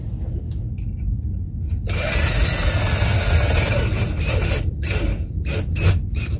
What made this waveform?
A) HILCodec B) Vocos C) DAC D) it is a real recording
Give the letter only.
D